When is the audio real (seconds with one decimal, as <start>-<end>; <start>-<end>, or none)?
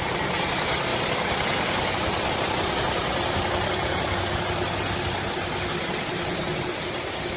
0.0-7.4